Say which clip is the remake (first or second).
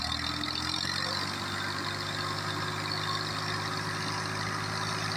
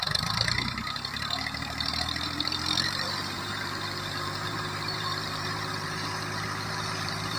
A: second